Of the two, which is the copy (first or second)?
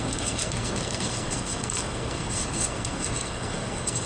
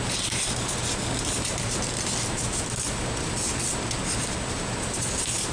first